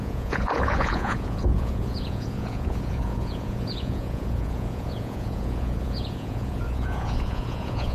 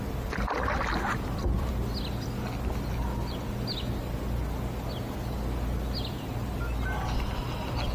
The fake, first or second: first